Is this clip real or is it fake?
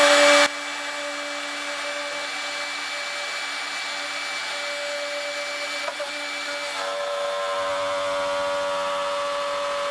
real